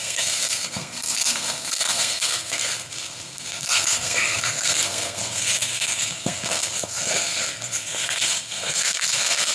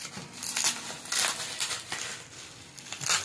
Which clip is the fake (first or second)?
first